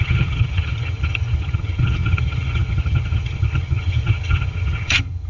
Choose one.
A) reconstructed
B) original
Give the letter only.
A